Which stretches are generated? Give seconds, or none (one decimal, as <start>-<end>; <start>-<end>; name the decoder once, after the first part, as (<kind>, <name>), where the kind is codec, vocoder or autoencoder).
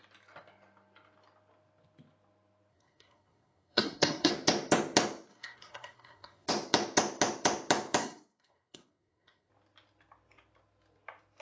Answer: 2.7-4.3 (codec, SNAC); 5.3-6.5; 8.0-9.5